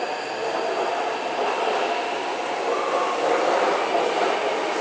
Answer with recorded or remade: recorded